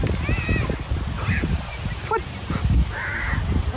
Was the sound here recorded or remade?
recorded